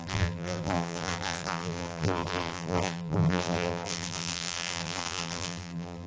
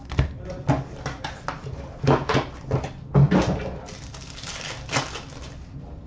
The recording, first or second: second